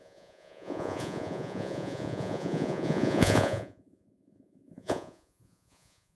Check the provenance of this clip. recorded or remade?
remade